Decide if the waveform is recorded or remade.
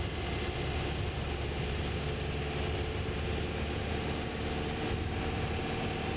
recorded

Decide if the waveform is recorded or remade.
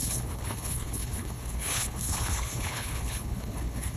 remade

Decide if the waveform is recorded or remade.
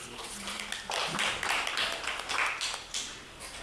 recorded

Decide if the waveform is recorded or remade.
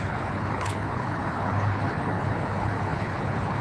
remade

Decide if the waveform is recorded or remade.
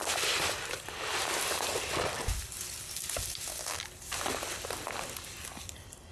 recorded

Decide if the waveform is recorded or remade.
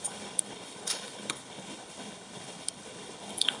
remade